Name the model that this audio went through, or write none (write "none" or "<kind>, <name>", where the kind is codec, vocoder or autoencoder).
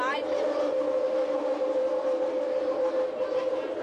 none